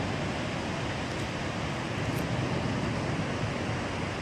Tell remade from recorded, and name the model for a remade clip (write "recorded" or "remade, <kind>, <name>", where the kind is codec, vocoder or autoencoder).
recorded